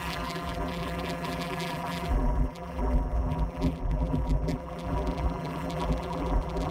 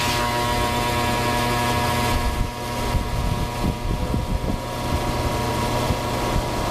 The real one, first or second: second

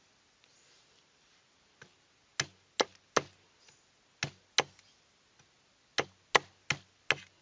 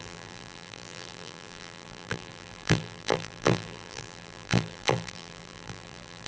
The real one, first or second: first